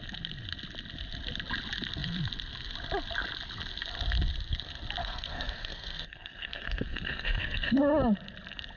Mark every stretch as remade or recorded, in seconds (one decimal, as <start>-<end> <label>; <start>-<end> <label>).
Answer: 0.0-5.0 recorded; 5.0-7.8 remade; 7.8-8.8 recorded

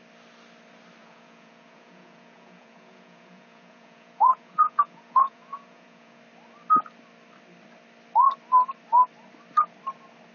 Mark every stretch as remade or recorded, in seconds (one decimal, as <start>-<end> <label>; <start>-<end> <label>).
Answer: 0.0-1.0 recorded; 1.0-6.2 remade; 6.2-10.3 recorded

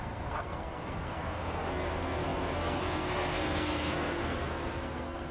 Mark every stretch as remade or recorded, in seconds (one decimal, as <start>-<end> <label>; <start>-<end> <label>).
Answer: 0.0-5.3 remade

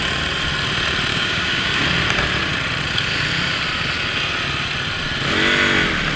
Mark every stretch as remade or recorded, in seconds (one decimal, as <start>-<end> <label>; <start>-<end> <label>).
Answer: 0.0-1.1 recorded; 1.1-1.8 remade; 1.8-6.2 recorded

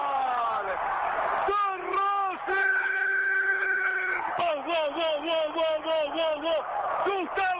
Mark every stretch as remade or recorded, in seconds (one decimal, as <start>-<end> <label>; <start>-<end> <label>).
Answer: 0.0-2.6 recorded; 2.6-4.5 remade; 4.5-7.6 recorded

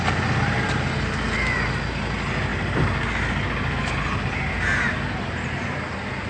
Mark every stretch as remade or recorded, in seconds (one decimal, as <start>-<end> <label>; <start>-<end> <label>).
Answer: 0.0-6.3 recorded

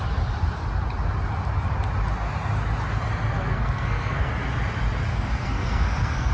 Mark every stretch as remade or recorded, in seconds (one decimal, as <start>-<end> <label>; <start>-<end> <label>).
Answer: 0.0-3.3 recorded; 3.3-4.3 remade; 4.3-5.1 recorded; 5.1-6.3 remade